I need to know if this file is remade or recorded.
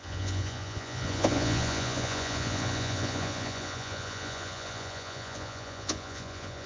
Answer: remade